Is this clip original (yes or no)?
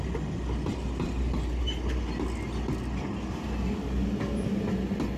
yes